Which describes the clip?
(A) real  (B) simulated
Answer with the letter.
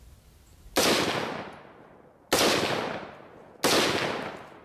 A